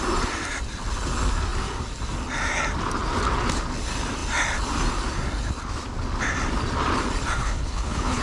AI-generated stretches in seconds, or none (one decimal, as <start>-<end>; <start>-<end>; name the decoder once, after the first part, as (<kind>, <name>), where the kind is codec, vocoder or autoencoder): 7.4-8.2 (codec, HILCodec)